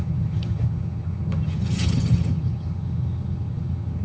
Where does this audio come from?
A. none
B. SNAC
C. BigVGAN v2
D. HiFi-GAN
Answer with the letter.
D